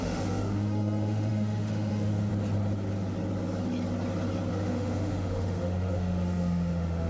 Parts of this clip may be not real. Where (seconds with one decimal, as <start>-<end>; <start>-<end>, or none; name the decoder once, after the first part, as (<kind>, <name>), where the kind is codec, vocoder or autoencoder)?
0.0-2.3 (autoencoder, DAC-VAE); 4.5-7.1